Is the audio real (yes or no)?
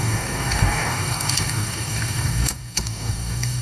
no